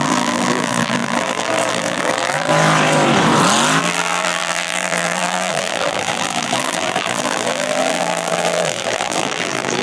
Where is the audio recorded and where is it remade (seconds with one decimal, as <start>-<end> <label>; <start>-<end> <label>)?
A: 0.0-2.5 remade; 2.5-3.8 recorded; 3.8-9.8 remade